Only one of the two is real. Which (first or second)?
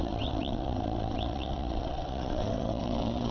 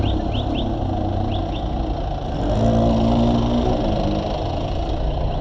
second